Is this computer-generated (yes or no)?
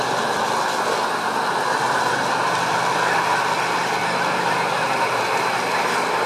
yes